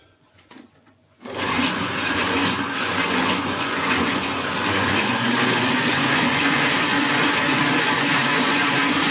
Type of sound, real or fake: fake